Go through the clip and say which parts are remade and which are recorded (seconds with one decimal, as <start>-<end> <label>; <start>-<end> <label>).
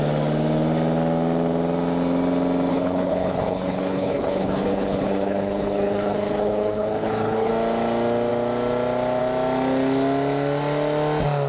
0.0-2.7 recorded; 2.7-7.5 remade; 7.5-11.5 recorded